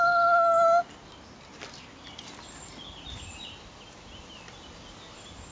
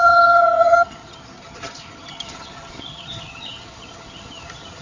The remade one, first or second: second